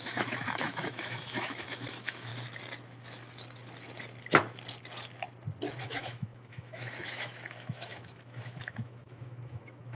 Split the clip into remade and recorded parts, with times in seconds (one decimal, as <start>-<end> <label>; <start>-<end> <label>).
0.0-2.3 remade; 2.3-5.8 recorded; 5.8-9.9 remade